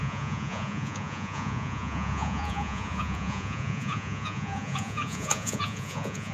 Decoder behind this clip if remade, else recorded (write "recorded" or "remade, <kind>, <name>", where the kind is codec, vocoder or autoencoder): remade, vocoder, Vocos